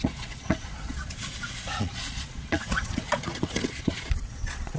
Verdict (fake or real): fake